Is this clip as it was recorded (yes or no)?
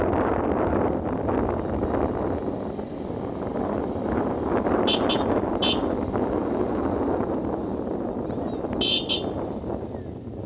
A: yes